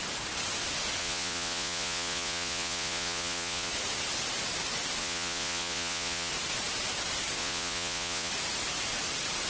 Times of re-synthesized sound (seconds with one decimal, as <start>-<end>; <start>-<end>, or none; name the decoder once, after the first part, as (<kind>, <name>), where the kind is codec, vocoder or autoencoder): 1.0-3.7 (vocoder, Vocos); 5.0-6.3; 7.4-8.3